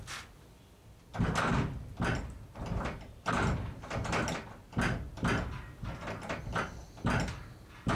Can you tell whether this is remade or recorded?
recorded